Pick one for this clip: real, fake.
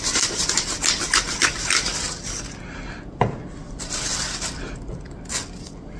real